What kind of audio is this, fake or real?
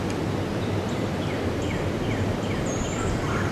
real